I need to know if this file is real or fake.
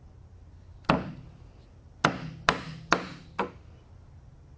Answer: real